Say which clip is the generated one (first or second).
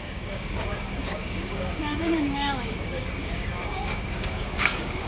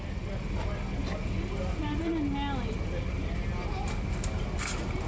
first